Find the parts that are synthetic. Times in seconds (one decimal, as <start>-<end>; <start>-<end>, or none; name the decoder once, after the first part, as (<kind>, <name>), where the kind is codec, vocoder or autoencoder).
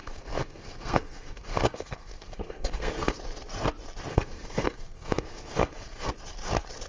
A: 0.0-3.2 (codec, SNAC); 4.1-6.1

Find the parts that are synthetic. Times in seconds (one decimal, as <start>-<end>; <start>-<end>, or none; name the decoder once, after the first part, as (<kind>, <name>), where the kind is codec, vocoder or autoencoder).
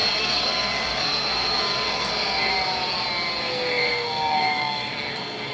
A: 0.0-2.5 (codec, SNAC); 3.4-5.5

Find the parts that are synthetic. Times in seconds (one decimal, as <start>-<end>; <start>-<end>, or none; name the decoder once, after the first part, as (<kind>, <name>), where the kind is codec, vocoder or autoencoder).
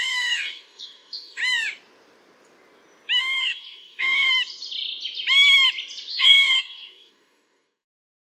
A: 0.0-1.4 (codec, DAC); 3.2-4.3; 6.1-8.4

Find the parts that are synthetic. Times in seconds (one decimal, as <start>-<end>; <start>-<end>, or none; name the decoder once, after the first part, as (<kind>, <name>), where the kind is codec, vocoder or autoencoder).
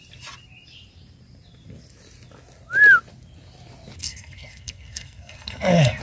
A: 4.0-6.0 (codec, SNAC)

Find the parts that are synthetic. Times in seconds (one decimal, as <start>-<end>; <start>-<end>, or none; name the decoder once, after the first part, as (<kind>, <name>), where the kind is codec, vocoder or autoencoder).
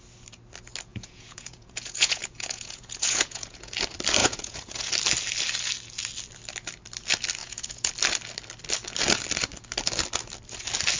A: 0.9-3.7 (vocoder, Vocos); 4.2-4.9; 7.4-7.9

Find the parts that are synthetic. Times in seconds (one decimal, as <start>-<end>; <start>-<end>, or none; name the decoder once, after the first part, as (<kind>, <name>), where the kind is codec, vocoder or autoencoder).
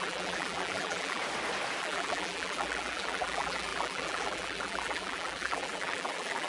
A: 0.0-1.2 (vocoder, BigVGAN v2); 1.8-6.5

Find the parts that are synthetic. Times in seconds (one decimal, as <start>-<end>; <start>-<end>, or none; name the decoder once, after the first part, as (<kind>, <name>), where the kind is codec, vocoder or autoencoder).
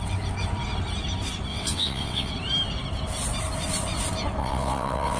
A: 1.5-2.3 (vocoder, WaveNeXt); 4.4-5.2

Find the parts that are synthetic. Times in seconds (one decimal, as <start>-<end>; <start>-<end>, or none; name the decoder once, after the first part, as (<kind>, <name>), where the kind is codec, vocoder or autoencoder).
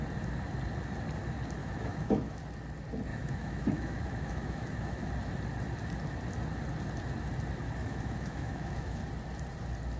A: 1.6-2.4 (autoencoder, DAC-VAE); 3.1-5.1; 7.8-9.0